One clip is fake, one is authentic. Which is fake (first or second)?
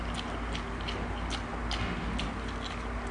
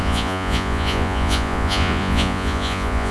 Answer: second